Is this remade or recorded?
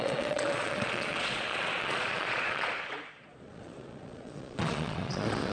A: remade